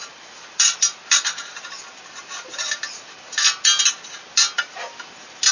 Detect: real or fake real